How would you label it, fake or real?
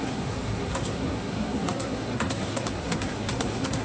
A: fake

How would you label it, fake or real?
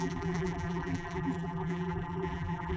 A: fake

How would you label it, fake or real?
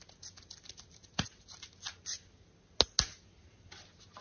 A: real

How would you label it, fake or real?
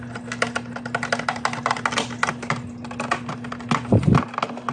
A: real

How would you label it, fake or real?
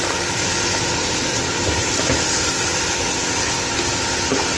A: real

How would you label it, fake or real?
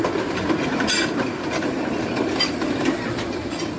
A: real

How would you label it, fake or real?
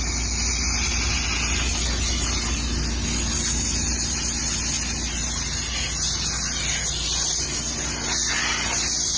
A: real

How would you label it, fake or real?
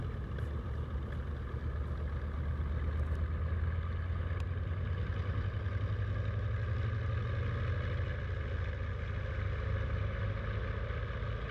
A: real